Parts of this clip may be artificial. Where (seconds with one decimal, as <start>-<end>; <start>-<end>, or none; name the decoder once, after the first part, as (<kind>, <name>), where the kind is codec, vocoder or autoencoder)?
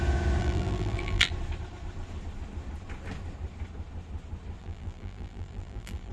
0.4-1.3 (vocoder, BigVGAN v2); 4.6-6.1